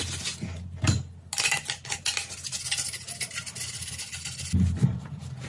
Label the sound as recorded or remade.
recorded